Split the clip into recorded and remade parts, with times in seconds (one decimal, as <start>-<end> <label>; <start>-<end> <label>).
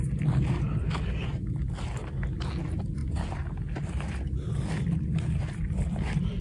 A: 0.0-6.4 recorded